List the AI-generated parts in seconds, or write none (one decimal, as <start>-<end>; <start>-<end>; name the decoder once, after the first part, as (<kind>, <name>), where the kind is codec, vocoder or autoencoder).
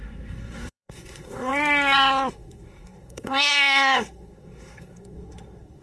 0.0-1.5 (codec, SNAC); 2.3-5.8